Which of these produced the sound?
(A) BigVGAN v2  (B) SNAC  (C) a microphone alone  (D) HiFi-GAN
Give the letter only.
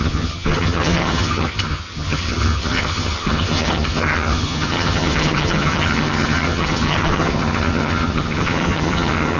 D